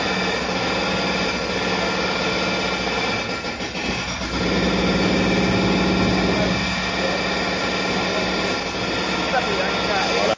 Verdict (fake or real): real